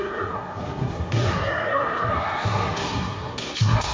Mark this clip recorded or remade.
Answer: remade